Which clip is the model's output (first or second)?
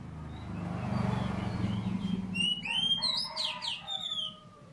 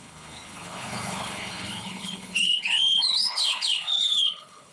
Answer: second